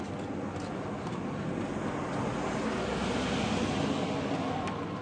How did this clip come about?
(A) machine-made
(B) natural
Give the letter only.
B